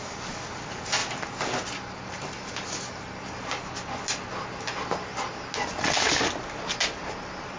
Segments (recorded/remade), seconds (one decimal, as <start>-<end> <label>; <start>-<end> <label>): 0.0-7.6 recorded